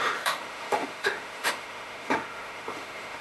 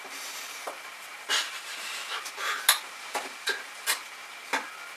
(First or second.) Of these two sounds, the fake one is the first